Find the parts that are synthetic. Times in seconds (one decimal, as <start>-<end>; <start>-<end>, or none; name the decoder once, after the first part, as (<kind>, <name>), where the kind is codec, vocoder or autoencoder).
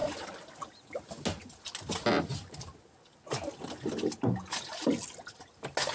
none